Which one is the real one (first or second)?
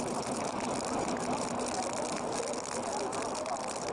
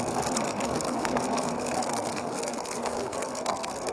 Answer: first